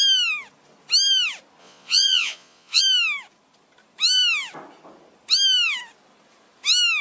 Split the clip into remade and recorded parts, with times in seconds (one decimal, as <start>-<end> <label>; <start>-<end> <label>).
0.0-1.6 recorded; 1.6-2.8 remade; 2.8-7.0 recorded